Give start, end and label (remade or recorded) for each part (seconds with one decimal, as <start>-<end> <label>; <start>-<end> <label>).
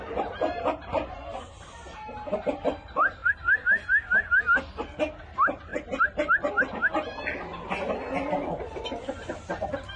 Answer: 0.0-10.0 recorded